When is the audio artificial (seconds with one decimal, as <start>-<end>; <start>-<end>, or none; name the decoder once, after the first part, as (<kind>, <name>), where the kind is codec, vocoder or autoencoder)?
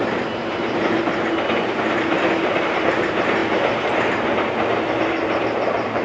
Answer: 0.0-6.0 (vocoder, BigVGAN v2)